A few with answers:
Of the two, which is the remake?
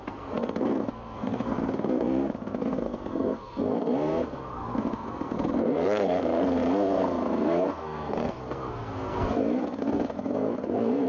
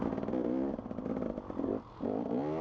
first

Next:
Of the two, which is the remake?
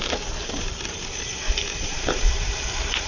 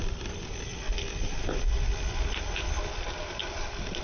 first